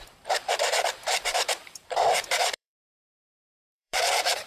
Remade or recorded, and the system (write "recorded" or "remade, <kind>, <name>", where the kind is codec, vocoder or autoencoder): remade, vocoder, BigVGAN v2